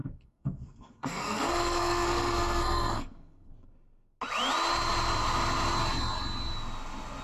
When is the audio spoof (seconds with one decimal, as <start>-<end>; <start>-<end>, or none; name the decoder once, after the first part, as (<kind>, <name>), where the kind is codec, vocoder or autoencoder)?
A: 0.0-3.5 (codec, SNAC)